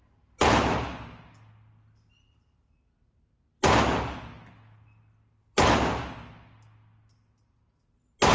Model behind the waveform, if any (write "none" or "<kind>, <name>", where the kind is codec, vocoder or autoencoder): none